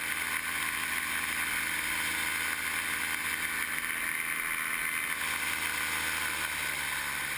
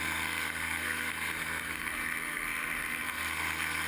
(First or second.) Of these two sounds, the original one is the first